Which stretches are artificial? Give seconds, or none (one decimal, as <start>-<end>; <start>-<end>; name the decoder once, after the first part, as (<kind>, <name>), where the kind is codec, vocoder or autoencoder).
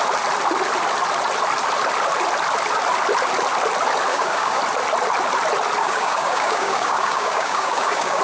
4.1-4.6 (codec, DAC); 5.8-8.2